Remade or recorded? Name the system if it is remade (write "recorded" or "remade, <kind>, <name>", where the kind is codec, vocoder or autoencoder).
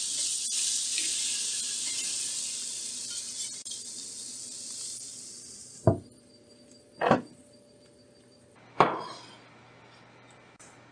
recorded